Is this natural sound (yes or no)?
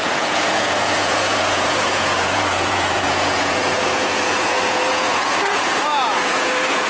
no